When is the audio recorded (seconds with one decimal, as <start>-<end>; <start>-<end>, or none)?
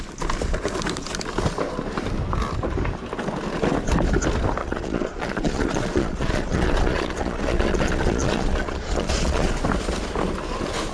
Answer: 0.0-4.6; 9.5-10.9